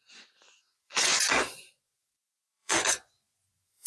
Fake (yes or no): yes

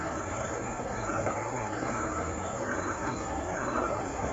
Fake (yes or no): yes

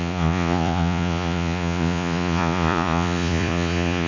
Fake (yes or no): yes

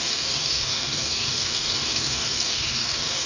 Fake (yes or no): yes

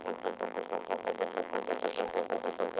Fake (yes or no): yes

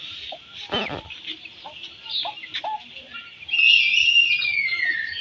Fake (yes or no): no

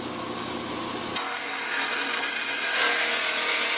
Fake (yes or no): no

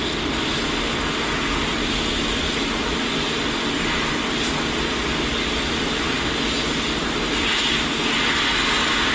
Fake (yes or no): no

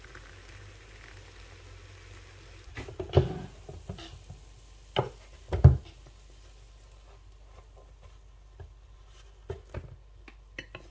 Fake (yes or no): no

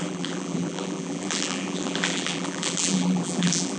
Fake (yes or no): yes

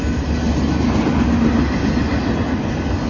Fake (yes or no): no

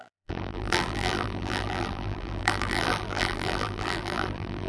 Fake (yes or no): yes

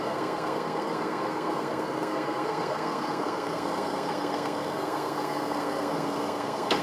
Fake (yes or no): yes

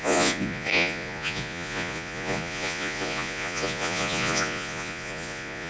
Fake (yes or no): yes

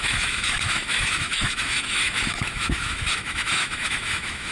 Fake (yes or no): yes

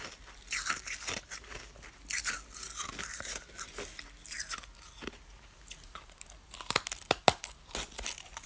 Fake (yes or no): no